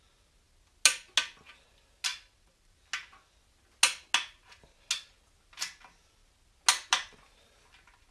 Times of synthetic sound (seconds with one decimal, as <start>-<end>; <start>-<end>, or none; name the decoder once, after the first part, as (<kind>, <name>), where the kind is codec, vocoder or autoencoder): none

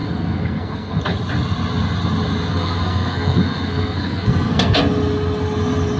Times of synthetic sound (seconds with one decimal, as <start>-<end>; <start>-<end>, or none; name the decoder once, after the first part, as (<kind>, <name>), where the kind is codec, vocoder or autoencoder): 0.0-1.0 (codec, SNAC); 2.5-4.8